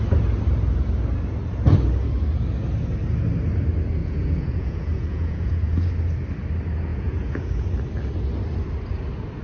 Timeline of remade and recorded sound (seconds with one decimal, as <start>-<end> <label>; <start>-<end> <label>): 0.0-4.0 recorded; 4.0-5.9 remade; 5.9-6.9 recorded; 6.9-7.5 remade; 7.5-9.4 recorded